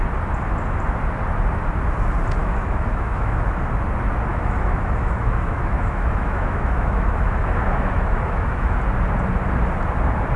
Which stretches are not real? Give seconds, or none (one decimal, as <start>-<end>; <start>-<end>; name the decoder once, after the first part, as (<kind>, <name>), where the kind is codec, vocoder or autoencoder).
2.4-3.6 (autoencoder, DAC-VAE); 4.3-8.8